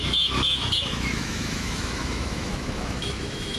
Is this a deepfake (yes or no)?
yes